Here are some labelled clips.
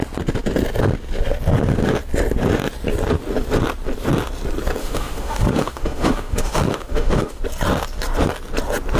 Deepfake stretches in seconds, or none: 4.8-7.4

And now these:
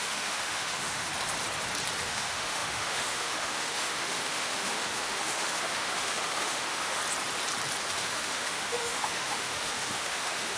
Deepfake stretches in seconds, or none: 0.0-1.1; 2.0-7.0; 7.9-10.6

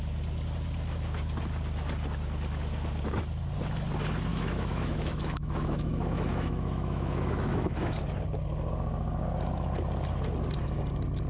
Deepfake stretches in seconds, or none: 4.3-8.0

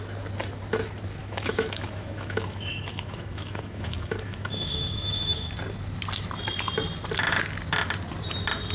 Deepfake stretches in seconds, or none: 1.2-5.5

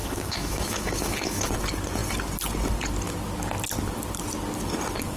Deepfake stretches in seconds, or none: 0.0-1.5

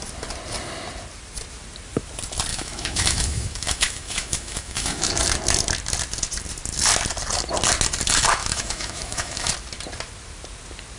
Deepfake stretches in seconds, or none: 2.5-5.1; 8.4-9.5

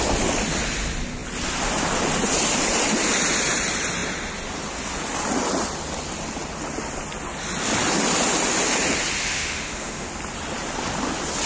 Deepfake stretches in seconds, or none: 9.2-10.1

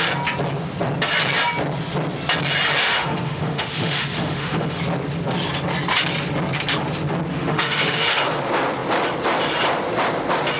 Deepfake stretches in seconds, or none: 2.8-4.8; 7.3-8.1